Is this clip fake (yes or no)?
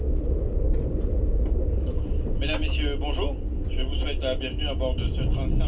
no